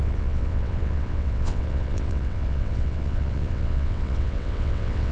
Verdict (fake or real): fake